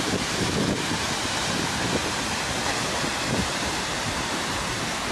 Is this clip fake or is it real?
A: fake